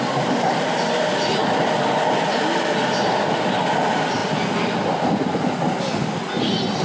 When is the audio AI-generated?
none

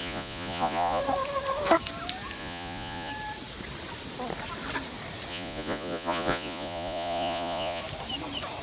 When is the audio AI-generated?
0.0-1.0; 2.4-3.1; 5.3-7.8

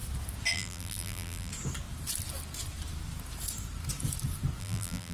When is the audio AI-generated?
0.5-1.5; 4.6-5.1

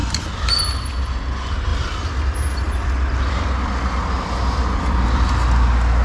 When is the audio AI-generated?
0.0-0.6; 1.7-5.3